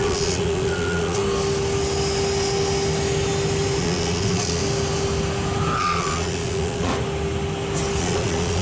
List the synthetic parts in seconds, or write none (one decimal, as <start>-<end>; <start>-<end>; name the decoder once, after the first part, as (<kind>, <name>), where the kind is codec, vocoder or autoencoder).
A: 0.0-1.2 (vocoder, Vocos); 3.8-4.6; 5.8-6.9; 8.0-8.6